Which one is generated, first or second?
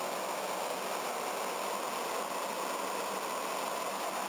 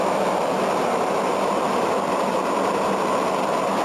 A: second